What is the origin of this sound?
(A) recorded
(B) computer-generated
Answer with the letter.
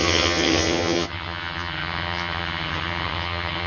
B